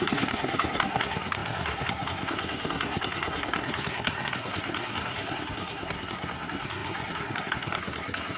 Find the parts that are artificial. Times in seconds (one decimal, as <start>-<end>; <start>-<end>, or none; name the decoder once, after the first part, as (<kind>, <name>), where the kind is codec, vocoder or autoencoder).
0.0-8.4 (codec, SNAC)